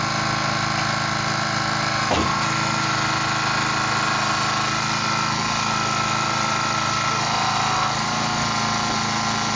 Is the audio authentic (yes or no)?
yes